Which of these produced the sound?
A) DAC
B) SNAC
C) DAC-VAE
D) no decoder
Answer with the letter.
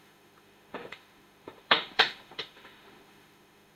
C